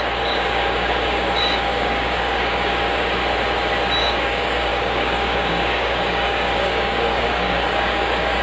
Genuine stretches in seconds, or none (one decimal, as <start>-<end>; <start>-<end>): 3.2-4.0